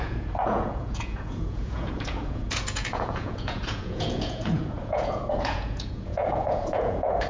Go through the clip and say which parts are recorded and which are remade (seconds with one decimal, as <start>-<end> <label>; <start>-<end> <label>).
0.0-7.3 remade